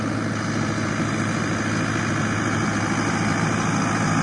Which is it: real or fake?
real